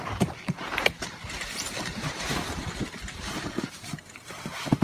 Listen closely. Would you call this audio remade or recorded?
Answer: remade